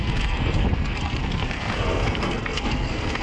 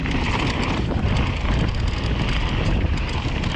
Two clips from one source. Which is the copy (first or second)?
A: first